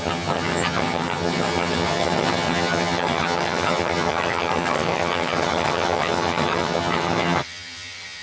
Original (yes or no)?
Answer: no